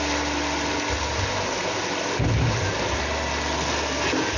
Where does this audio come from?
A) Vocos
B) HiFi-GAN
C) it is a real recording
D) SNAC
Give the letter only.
C